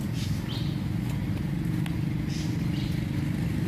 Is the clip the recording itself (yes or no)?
yes